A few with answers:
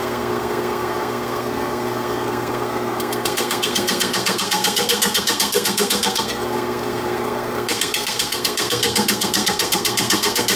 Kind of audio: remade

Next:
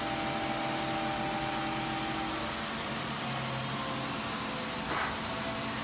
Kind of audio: recorded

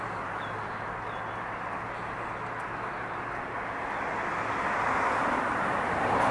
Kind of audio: recorded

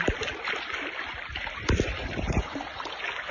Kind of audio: recorded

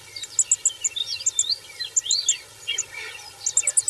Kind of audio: recorded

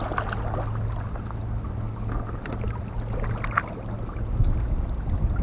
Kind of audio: recorded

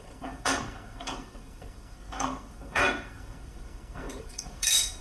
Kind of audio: remade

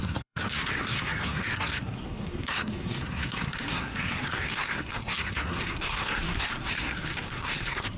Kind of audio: remade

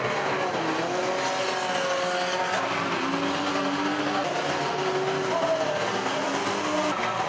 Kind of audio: recorded